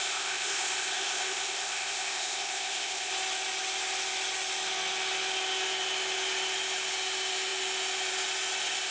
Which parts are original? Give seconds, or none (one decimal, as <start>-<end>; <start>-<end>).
3.1-8.9